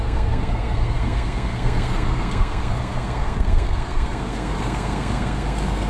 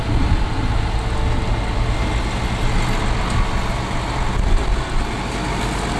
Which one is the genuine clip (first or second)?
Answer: second